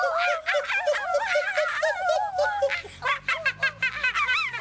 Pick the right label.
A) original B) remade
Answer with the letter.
A